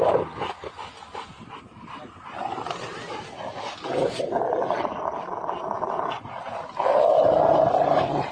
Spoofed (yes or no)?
no